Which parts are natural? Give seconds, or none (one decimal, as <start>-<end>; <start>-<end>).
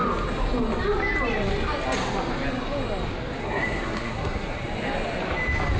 0.0-3.4; 4.6-5.8